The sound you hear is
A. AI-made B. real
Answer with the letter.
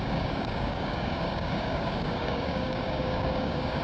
A